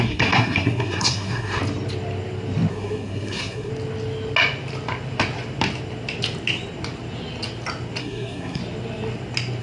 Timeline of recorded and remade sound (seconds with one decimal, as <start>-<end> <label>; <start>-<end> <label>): 0.0-1.6 remade; 1.6-2.7 recorded; 2.7-3.7 remade; 3.7-8.0 recorded; 8.0-8.6 remade; 8.6-9.6 recorded